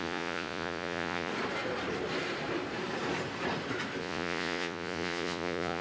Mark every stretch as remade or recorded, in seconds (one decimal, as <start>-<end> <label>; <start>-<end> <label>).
0.0-1.3 remade; 1.3-4.0 recorded; 4.0-5.8 remade